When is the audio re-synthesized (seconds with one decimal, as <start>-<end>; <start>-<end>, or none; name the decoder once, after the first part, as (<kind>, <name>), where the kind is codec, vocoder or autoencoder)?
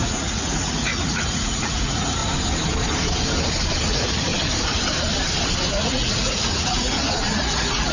0.0-2.2 (vocoder, Vocos); 3.8-4.3; 5.7-7.9